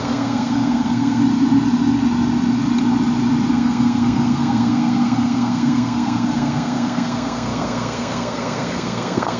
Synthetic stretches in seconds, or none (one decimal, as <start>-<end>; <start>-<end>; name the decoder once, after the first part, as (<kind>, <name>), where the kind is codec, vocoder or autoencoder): 0.0-1.2 (codec, SNAC); 3.5-9.4